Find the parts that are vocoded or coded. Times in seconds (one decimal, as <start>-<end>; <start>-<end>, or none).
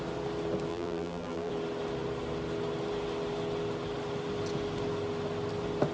0.7-1.5